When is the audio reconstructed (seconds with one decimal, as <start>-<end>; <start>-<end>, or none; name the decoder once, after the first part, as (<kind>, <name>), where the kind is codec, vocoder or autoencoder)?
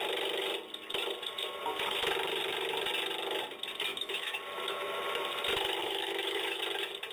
3.9-4.4 (autoencoder, DAC-VAE); 5.8-6.6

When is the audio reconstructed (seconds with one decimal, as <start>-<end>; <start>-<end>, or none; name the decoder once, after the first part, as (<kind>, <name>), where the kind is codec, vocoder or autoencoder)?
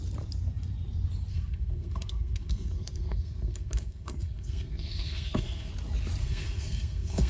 1.3-5.7 (codec, SNAC); 6.2-7.3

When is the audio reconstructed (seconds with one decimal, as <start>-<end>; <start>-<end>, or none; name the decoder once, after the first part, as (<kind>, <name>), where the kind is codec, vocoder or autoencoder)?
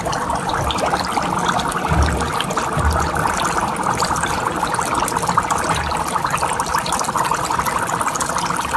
3.6-4.4 (vocoder, BigVGAN v2)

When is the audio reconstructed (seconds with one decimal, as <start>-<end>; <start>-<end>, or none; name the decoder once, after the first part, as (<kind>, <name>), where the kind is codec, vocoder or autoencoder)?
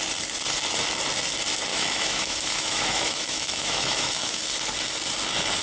1.7-4.3 (autoencoder, DAC-VAE)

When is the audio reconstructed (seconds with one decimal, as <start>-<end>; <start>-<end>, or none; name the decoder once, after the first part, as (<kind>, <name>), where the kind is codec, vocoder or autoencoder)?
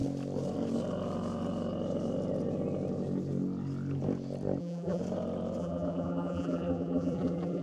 4.6-5.0 (vocoder, BigVGAN v2); 5.6-7.6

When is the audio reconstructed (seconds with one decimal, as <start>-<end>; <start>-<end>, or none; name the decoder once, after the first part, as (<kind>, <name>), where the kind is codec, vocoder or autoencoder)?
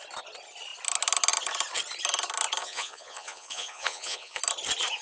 2.6-4.4 (vocoder, Vocos)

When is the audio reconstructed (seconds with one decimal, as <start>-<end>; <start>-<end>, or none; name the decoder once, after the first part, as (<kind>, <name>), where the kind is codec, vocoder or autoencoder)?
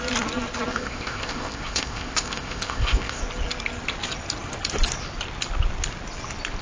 0.7-3.2 (codec, ZipCodec)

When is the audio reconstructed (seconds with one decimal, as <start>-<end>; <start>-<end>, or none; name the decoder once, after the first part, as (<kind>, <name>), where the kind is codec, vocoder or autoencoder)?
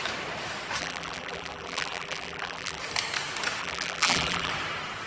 0.8-2.8 (vocoder, BigVGAN v2); 3.6-4.5